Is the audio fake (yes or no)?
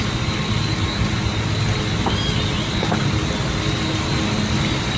no